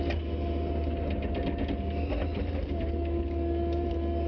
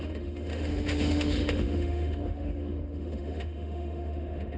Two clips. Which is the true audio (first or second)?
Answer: first